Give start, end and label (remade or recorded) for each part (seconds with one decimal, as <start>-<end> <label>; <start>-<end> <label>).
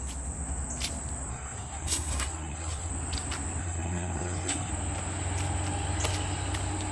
0.0-1.3 recorded; 1.3-2.9 remade; 2.9-3.6 recorded; 3.6-4.7 remade; 4.7-6.9 recorded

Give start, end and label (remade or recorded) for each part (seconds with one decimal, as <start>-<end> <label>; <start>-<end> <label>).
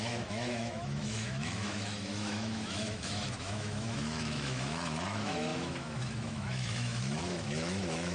0.0-8.1 remade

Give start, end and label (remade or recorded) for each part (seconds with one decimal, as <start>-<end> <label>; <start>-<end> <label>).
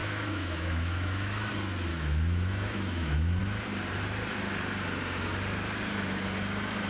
0.0-1.5 remade; 1.5-1.9 recorded; 1.9-3.4 remade; 3.4-6.9 recorded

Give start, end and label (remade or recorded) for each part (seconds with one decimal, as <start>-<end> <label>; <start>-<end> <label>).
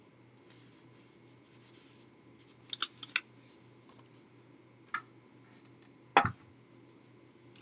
0.0-7.6 recorded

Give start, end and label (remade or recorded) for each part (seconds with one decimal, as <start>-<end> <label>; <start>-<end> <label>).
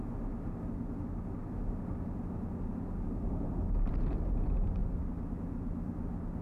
0.0-6.4 recorded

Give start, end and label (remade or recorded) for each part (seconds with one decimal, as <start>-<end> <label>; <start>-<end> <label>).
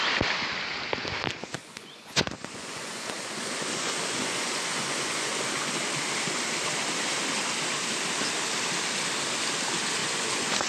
0.0-1.6 recorded; 1.6-5.7 remade; 5.7-10.0 recorded; 10.0-10.7 remade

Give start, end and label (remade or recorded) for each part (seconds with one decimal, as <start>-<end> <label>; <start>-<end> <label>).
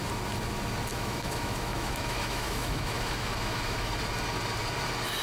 0.0-0.9 recorded; 0.9-4.0 remade; 4.0-5.2 recorded